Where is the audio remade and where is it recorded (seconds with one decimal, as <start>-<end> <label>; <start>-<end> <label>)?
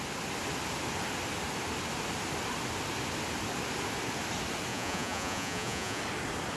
0.0-4.7 recorded; 4.7-6.0 remade; 6.0-6.6 recorded